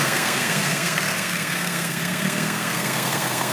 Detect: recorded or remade remade